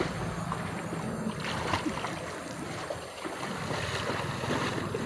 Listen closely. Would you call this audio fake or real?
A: real